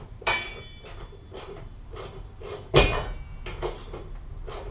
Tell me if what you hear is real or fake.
fake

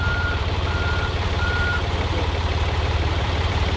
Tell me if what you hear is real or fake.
fake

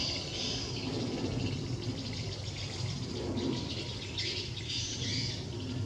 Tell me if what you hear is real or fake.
real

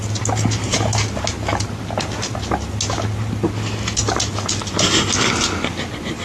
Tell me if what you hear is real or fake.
real